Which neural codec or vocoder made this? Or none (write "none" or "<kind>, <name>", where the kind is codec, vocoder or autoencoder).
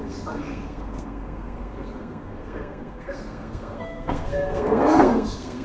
codec, SNAC